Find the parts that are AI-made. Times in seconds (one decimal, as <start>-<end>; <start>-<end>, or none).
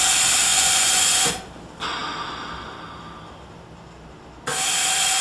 0.5-1.3